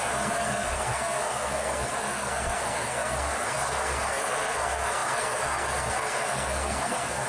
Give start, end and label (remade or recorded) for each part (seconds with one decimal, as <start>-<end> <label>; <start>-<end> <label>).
0.0-7.3 remade